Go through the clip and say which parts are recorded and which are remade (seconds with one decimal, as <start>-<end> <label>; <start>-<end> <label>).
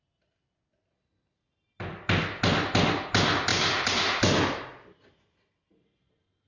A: 0.0-6.5 recorded